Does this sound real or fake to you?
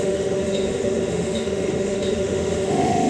fake